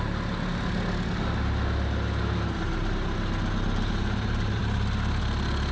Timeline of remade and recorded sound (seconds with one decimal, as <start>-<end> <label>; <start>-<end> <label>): 0.0-5.7 recorded